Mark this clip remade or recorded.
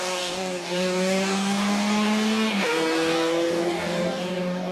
remade